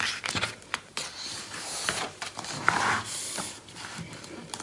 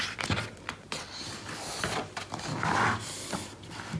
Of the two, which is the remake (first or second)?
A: first